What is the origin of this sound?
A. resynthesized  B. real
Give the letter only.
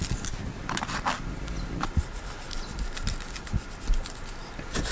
B